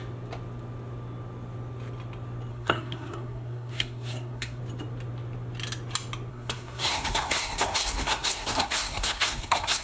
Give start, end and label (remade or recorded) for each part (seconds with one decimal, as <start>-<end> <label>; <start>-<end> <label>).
0.0-2.5 recorded; 2.5-4.6 remade; 4.6-6.3 recorded; 6.3-9.8 remade